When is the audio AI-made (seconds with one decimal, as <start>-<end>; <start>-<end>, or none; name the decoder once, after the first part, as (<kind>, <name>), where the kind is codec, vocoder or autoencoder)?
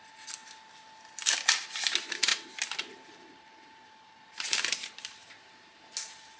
2.3-5.8 (vocoder, BigVGAN v2)